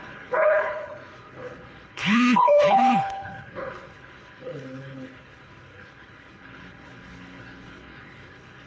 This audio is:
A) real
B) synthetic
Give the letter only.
B